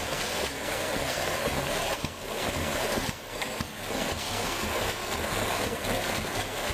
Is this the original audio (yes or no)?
no